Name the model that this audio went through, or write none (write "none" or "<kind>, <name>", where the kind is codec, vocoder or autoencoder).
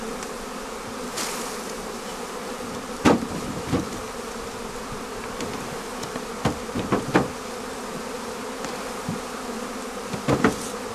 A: vocoder, BigVGAN v2